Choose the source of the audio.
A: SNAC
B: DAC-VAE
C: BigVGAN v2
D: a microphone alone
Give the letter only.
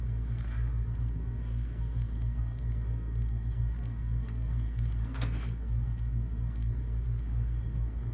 A